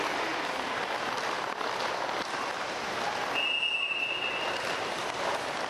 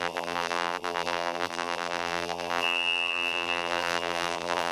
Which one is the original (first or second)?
first